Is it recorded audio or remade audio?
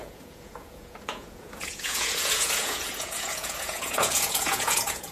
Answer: remade